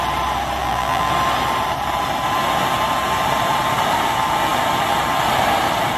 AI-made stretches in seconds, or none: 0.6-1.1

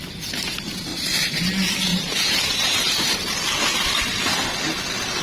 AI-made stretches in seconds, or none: 0.9-1.5; 1.9-2.9

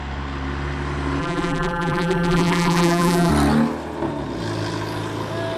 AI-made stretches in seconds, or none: 1.2-3.3

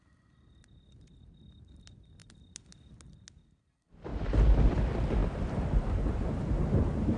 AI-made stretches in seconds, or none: 5.2-6.0

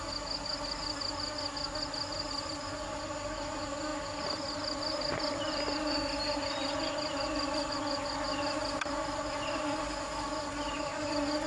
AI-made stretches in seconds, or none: none